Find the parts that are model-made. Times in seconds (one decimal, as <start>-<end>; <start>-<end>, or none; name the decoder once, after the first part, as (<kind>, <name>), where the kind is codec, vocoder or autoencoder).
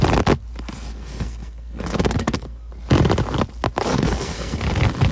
0.9-2.7 (codec, SNAC); 3.9-4.6